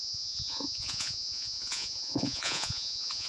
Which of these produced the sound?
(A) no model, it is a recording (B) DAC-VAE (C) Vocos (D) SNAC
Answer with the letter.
C